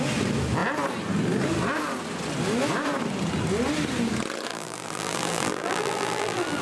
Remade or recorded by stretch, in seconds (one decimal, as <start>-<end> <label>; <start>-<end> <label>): 0.0-4.5 recorded; 4.5-6.6 remade

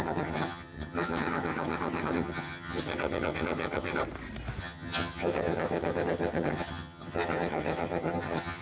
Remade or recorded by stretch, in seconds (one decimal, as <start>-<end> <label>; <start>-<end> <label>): 0.0-4.0 remade; 4.0-4.6 recorded; 4.6-8.6 remade

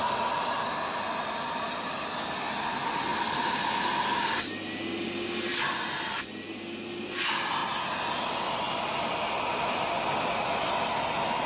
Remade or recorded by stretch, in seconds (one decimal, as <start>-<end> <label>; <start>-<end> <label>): 0.0-11.5 recorded

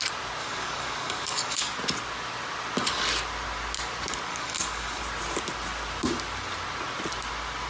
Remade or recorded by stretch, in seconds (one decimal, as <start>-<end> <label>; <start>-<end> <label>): 0.0-0.4 recorded; 0.4-1.6 remade; 1.6-4.3 recorded; 4.3-5.0 remade; 5.0-7.7 recorded

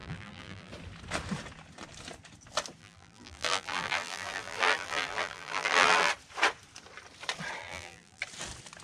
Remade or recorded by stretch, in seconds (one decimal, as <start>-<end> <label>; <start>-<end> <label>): 0.0-0.7 remade; 0.7-2.8 recorded; 2.8-6.1 remade; 6.1-7.6 recorded; 7.6-8.2 remade; 8.2-8.8 recorded

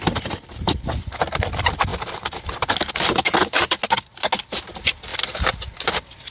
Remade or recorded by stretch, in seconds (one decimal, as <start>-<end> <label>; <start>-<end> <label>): 0.0-6.3 recorded

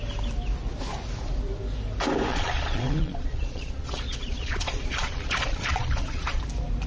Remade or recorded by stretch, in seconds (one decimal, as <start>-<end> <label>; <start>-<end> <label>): 0.0-2.3 recorded; 2.3-6.4 remade; 6.4-6.9 recorded

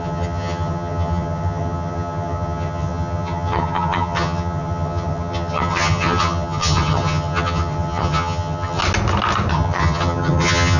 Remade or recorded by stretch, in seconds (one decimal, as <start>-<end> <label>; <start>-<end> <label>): 0.0-8.8 remade; 8.8-9.5 recorded; 9.5-10.8 remade